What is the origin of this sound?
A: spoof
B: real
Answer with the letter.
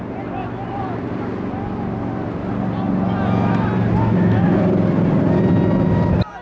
B